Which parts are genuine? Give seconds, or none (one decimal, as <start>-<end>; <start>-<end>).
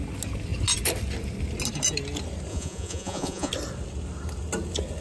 0.0-2.5; 3.5-5.0